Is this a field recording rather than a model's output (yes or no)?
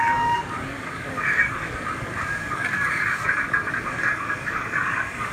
no